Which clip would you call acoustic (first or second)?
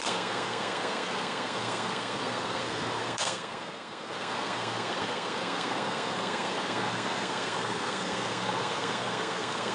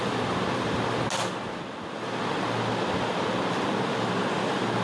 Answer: second